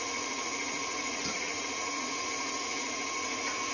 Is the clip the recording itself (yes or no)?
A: no